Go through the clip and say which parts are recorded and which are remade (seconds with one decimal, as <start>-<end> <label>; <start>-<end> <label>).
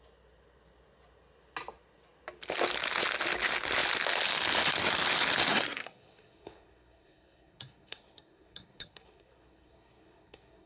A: 0.0-5.5 recorded; 5.5-10.7 remade